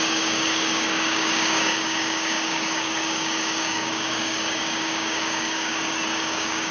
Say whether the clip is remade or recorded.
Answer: remade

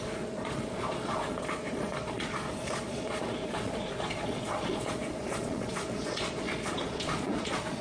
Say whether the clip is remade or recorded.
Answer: remade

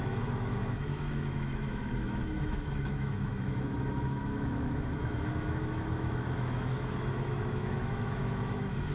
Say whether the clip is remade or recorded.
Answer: remade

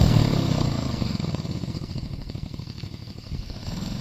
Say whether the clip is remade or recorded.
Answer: remade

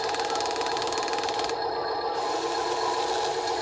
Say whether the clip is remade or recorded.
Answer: recorded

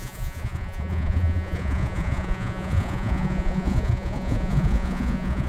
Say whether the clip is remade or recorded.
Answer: remade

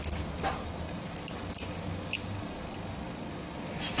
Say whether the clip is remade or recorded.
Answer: recorded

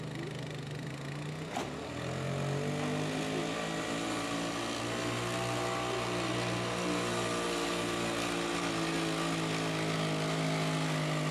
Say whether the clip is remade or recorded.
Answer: recorded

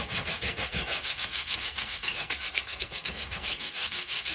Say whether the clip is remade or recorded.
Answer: remade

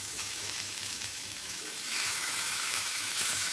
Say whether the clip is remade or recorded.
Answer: remade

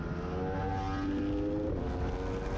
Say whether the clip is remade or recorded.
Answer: recorded